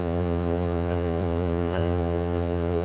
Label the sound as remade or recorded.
remade